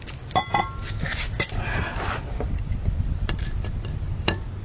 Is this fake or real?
real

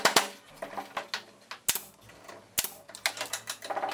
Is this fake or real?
real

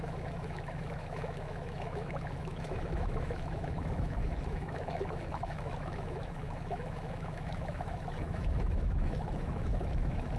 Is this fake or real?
fake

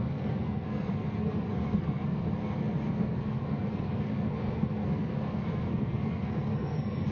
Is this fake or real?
fake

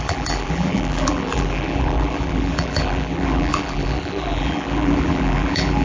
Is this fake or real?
fake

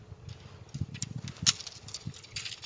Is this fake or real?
real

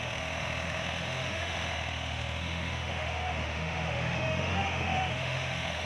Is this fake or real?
fake